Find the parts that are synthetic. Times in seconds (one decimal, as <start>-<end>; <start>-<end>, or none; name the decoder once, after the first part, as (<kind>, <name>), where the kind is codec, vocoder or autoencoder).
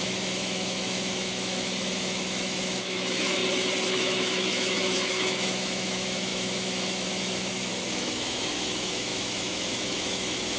0.0-3.4 (autoencoder, DAC-VAE); 3.9-10.6